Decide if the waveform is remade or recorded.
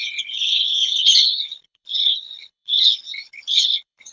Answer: remade